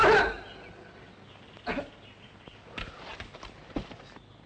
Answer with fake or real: real